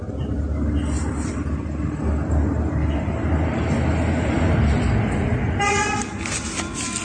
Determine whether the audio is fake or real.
real